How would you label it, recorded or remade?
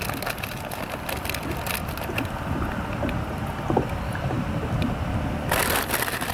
recorded